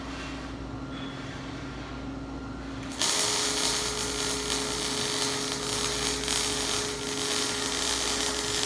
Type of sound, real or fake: real